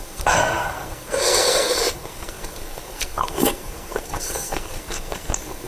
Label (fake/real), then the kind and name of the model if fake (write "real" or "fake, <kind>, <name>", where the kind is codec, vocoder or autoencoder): fake, codec, SNAC